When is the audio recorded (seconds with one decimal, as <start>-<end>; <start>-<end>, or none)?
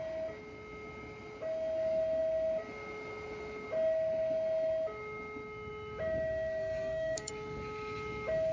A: 0.0-6.6; 7.3-8.5